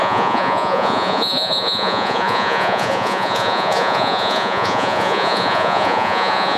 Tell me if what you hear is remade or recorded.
remade